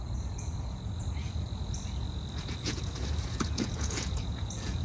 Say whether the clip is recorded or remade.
remade